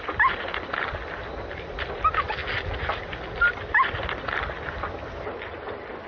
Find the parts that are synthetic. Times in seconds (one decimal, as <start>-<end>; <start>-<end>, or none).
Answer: none